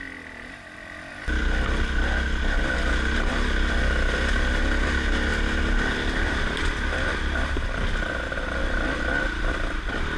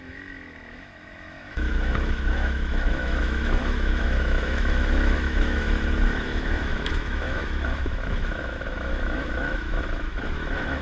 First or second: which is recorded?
first